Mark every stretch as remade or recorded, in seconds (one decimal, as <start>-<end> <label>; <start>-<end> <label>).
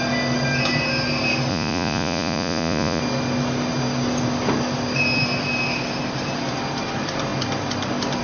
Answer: 0.0-1.5 recorded; 1.5-3.0 remade; 3.0-8.2 recorded